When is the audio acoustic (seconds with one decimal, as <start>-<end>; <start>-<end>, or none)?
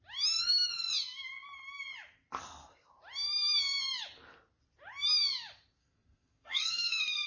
0.0-5.8